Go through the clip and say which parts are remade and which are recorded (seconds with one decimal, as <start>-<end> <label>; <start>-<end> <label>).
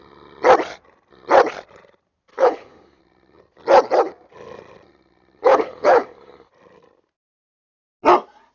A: 0.0-2.3 recorded; 2.3-3.0 remade; 3.0-5.4 recorded; 5.4-6.5 remade; 6.5-8.5 recorded